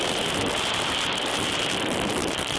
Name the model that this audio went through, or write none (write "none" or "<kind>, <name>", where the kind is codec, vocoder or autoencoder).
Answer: vocoder, BigVGAN v2